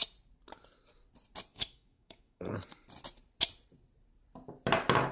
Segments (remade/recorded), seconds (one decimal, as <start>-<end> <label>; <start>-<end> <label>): 0.0-1.5 recorded; 1.5-2.5 remade; 2.5-5.1 recorded